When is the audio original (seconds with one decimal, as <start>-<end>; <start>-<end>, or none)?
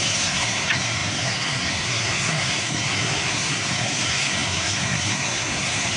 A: none